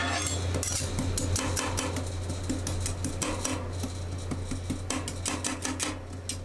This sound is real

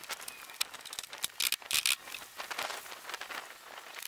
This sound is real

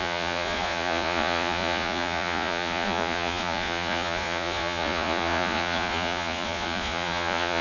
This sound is fake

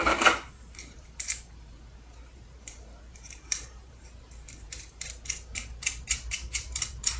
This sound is fake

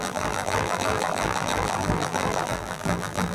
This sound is fake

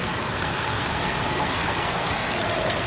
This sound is fake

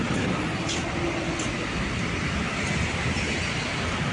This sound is fake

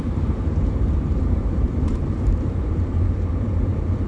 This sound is fake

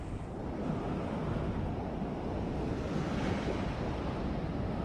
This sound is real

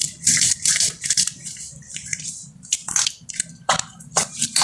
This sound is fake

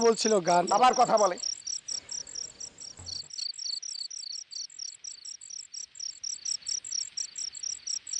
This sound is real